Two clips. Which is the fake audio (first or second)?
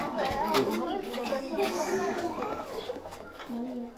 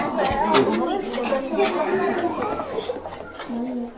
first